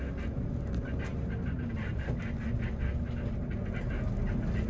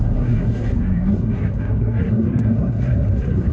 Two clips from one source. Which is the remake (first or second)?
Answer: second